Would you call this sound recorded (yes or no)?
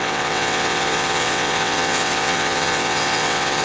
no